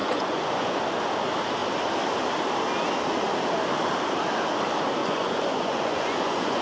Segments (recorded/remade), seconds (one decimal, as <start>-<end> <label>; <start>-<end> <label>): 0.0-0.8 remade; 0.8-5.0 recorded; 5.0-6.6 remade